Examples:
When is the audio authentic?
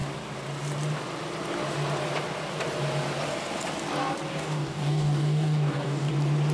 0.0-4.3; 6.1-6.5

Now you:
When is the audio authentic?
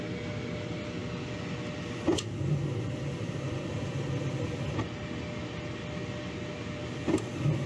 0.0-7.7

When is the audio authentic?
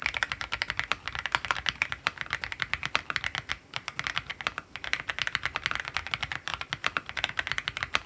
0.0-8.1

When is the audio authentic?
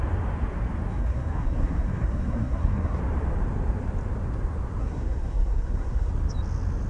0.0-0.9; 3.0-4.8; 6.1-6.9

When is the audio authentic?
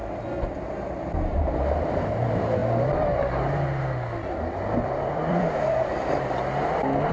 0.0-0.9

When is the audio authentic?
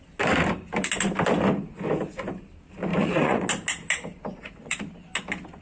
0.0-2.9; 3.5-4.3; 4.8-5.6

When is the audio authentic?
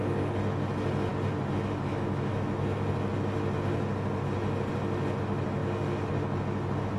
0.0-2.3; 2.9-7.0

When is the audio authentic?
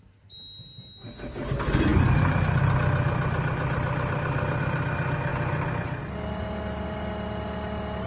0.0-1.9; 4.6-5.3; 6.0-8.1